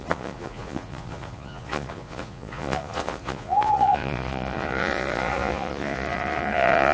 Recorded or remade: remade